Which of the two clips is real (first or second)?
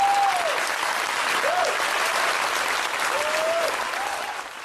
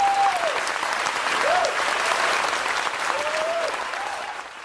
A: first